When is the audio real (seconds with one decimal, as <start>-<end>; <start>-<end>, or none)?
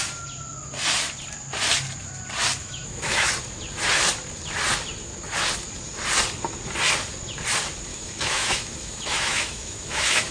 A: 0.0-2.6; 3.3-7.9